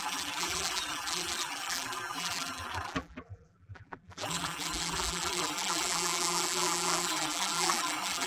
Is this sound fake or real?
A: fake